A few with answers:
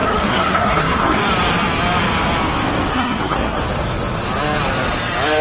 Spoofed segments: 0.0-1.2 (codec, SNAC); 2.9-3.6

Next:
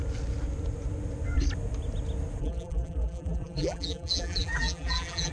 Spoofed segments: 2.4-5.3 (vocoder, BigVGAN v2)